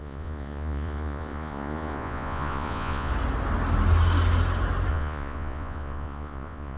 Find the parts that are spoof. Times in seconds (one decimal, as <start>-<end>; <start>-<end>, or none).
0.0-3.1; 4.9-6.8